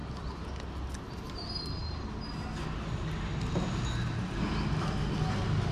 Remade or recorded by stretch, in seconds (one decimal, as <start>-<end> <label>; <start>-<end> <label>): 0.0-5.7 recorded